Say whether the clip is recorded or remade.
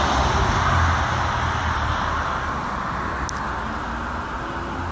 recorded